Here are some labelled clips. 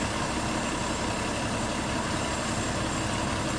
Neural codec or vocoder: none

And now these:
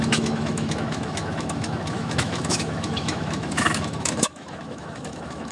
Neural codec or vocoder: autoencoder, DAC-VAE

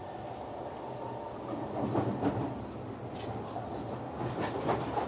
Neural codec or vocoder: none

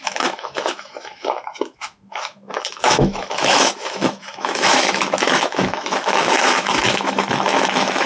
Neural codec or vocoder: autoencoder, DAC-VAE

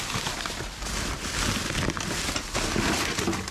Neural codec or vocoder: none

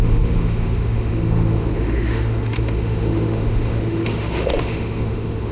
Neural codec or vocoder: autoencoder, DAC-VAE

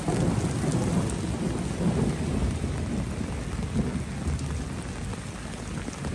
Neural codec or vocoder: none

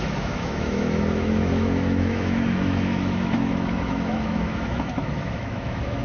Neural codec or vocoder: autoencoder, DAC-VAE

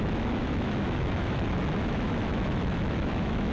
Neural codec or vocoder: autoencoder, DAC-VAE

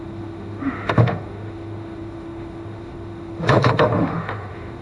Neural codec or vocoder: autoencoder, DAC-VAE